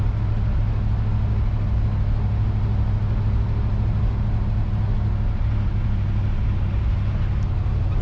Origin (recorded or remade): recorded